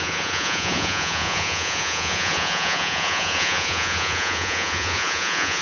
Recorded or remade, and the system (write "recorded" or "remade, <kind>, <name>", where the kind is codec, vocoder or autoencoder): remade, vocoder, Vocos